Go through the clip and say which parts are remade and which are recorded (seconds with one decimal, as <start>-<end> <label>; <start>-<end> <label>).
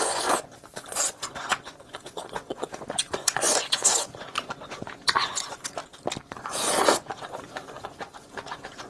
0.0-5.8 remade; 5.8-6.4 recorded; 6.4-8.9 remade